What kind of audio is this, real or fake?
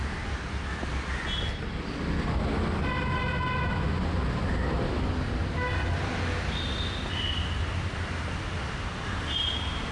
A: real